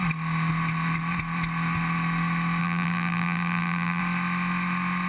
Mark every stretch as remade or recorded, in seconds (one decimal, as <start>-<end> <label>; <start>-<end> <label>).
0.0-2.6 recorded; 2.6-4.0 remade; 4.0-5.1 recorded